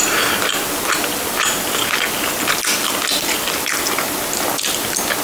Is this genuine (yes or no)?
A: yes